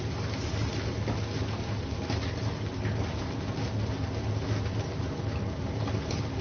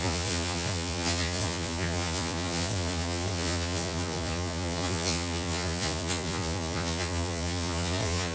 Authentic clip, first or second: first